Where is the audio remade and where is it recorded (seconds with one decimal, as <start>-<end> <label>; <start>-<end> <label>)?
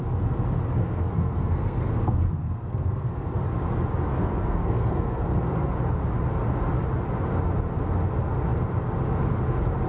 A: 0.0-0.8 recorded; 0.8-3.4 remade; 3.4-4.1 recorded; 4.1-5.7 remade; 5.7-9.9 recorded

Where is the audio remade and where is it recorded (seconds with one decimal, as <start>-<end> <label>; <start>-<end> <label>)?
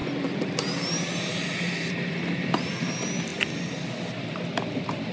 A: 0.0-2.2 remade; 2.2-5.1 recorded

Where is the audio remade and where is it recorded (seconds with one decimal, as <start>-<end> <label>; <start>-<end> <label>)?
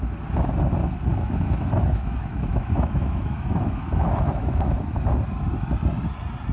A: 0.0-1.1 recorded; 1.1-5.0 remade; 5.0-6.5 recorded